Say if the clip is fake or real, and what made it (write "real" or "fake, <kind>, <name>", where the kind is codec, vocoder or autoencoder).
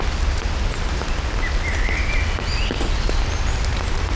real